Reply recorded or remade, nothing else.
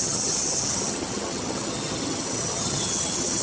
remade